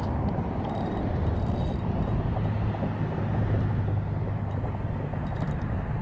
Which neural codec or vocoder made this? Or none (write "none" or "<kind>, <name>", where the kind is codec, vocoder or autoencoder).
none